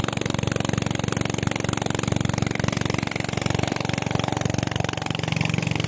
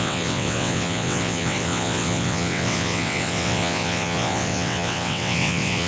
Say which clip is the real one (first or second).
first